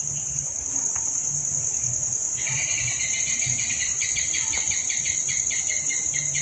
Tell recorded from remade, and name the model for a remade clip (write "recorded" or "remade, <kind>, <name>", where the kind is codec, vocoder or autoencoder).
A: recorded